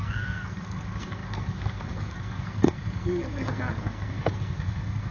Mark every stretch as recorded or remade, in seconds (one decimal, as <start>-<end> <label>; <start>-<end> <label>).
0.0-5.1 remade